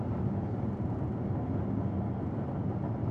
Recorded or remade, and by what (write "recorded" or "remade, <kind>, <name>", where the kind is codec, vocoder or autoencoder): recorded